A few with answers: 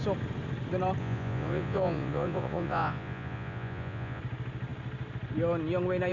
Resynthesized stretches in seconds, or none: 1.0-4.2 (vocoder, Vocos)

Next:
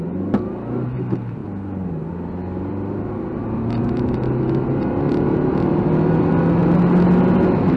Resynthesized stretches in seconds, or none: none

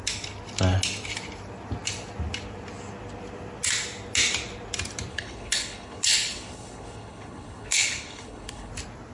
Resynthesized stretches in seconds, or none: 5.1-8.7 (codec, HILCodec)

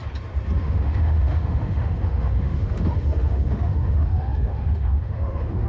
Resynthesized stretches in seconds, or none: 0.6-5.7 (autoencoder, DAC-VAE)

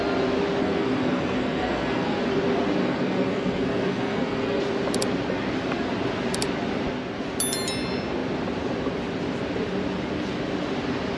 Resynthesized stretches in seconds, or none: 0.6-2.2 (codec, SNAC); 2.8-4.6